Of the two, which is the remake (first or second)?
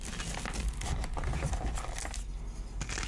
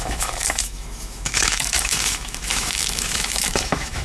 second